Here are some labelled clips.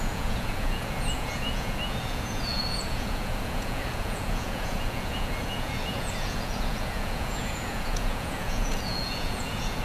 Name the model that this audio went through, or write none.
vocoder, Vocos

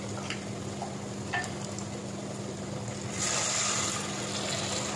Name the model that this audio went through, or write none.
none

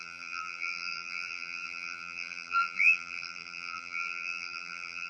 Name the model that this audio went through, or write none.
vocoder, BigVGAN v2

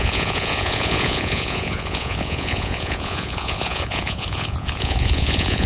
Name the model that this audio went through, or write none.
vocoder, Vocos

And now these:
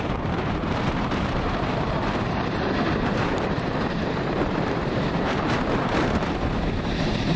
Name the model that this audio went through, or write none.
vocoder, BigVGAN v2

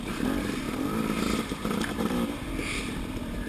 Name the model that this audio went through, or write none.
vocoder, BigVGAN v2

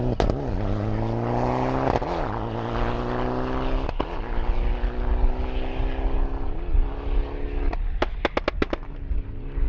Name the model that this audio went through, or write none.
none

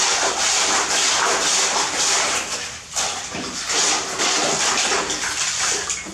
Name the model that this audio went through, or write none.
none